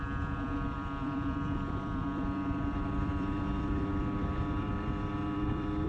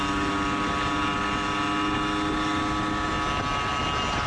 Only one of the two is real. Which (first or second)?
second